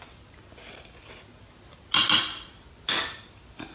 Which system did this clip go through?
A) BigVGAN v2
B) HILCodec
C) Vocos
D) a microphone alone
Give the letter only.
D